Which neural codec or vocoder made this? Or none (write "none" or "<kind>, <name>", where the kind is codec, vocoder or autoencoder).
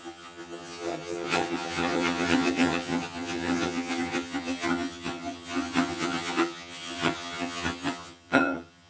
vocoder, HiFi-GAN